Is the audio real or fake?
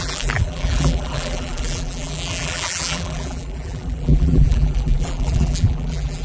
fake